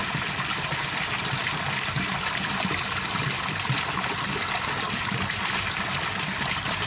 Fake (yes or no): no